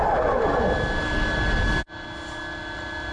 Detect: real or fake real